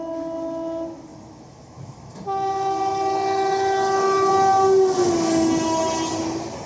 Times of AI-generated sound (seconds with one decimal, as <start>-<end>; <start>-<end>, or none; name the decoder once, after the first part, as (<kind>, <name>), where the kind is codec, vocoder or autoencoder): 1.1-4.3 (autoencoder, DAC-VAE)